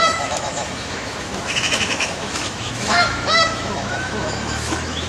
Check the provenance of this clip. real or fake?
fake